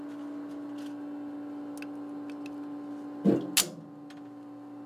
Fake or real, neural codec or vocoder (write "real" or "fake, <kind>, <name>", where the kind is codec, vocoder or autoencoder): real